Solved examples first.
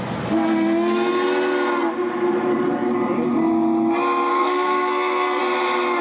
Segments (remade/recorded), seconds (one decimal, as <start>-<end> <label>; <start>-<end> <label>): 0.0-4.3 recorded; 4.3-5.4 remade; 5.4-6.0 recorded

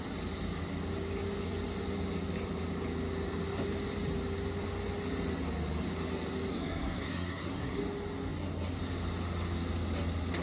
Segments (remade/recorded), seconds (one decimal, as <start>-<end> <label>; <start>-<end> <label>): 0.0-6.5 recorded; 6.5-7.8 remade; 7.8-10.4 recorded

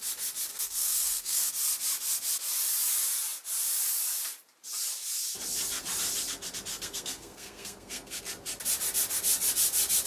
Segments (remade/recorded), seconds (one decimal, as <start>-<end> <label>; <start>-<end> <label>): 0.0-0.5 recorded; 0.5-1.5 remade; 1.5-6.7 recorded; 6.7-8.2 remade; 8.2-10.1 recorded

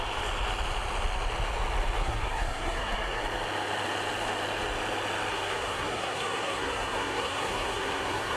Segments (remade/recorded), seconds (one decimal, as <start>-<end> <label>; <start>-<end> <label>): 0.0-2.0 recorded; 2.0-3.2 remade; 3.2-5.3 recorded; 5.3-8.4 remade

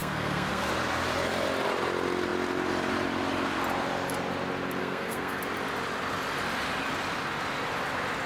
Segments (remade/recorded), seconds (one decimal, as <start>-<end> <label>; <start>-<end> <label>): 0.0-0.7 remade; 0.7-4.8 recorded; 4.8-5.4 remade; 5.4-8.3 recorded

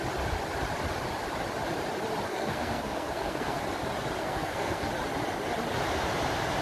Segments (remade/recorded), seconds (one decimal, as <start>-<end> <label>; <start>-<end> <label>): 0.0-2.3 recorded; 2.3-3.6 remade; 3.6-4.2 recorded; 4.2-4.9 remade; 4.9-6.6 recorded

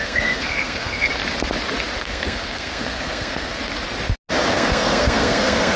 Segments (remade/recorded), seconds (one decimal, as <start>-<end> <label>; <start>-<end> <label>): 0.0-1.1 remade; 1.1-2.0 recorded; 2.0-3.6 remade; 3.6-4.5 recorded; 4.5-5.8 remade